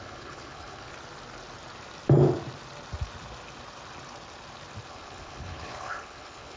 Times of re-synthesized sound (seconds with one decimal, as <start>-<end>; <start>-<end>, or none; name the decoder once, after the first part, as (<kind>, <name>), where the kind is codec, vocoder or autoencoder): 0.0-0.9 (codec, HILCodec); 4.9-6.6

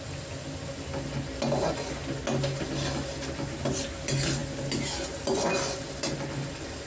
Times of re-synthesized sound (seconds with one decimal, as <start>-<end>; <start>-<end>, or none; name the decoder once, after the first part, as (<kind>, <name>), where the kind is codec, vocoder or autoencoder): none

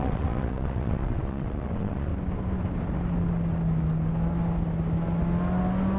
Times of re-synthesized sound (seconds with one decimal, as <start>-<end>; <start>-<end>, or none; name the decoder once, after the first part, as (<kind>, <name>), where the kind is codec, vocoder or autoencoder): 0.0-2.1 (vocoder, WaveNeXt)

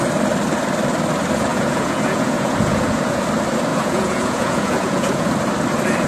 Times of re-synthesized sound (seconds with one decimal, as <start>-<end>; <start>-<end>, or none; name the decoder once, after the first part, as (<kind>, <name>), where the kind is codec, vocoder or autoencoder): 1.5-3.2 (vocoder, Vocos); 3.7-5.3

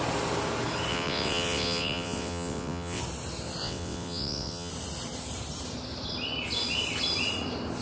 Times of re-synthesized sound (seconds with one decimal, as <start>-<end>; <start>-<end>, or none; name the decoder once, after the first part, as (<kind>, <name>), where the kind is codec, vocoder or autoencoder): 0.9-3.0 (vocoder, WaveNeXt); 3.6-4.7

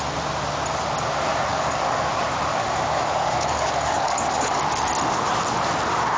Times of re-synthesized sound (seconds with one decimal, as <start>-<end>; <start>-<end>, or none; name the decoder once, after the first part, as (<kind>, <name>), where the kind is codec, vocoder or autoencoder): 1.5-2.1 (codec, DAC); 2.5-4.6

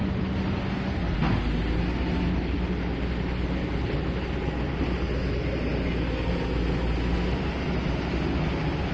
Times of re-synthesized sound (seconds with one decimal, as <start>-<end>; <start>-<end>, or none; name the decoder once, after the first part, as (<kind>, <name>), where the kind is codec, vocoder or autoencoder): none

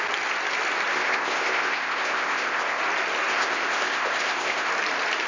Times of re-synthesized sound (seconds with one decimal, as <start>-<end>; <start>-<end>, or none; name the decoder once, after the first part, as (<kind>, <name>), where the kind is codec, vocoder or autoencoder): 0.9-2.8 (codec, ZipCodec); 3.3-4.7